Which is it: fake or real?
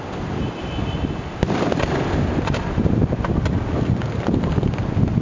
real